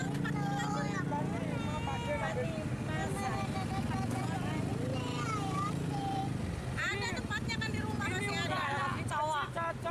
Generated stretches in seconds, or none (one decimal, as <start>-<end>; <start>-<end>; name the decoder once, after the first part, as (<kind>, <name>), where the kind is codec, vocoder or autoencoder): 4.7-6.2 (vocoder, BigVGAN v2)